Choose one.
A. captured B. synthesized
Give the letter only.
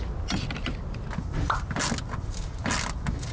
A